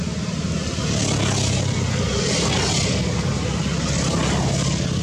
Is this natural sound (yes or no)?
yes